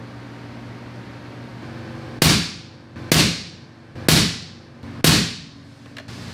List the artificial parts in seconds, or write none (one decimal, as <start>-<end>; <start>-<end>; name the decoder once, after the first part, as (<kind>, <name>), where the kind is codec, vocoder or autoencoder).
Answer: none